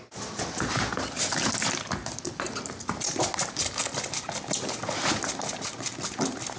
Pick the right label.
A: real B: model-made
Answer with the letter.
A